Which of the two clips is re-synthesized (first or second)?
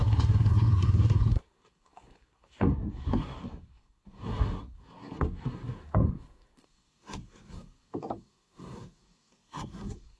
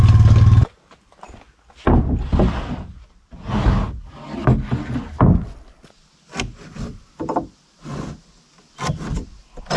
first